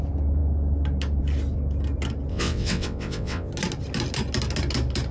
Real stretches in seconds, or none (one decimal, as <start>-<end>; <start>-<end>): 0.0-2.3; 3.5-5.1